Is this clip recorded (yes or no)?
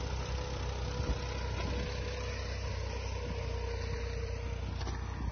yes